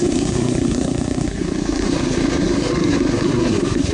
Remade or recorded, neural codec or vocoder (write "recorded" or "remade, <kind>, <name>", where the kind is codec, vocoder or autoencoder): remade, codec, SNAC